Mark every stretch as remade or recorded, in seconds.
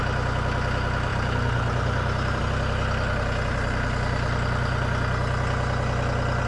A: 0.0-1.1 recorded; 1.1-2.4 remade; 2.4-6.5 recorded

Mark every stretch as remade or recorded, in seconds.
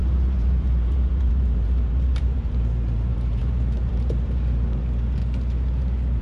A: 0.0-5.2 remade; 5.2-6.2 recorded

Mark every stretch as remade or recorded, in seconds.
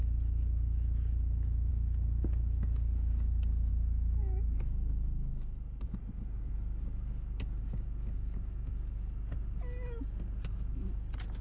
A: 0.0-11.4 recorded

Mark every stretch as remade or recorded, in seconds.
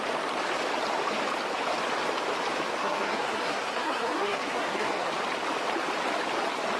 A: 0.0-2.8 recorded; 2.8-5.1 remade; 5.1-6.8 recorded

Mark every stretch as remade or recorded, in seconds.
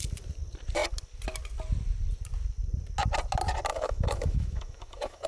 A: 0.0-3.7 recorded; 3.7-5.3 remade